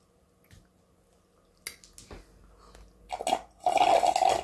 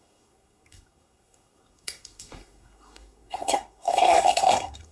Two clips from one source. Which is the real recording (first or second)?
first